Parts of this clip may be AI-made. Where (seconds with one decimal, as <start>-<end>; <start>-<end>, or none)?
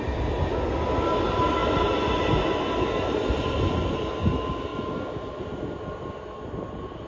none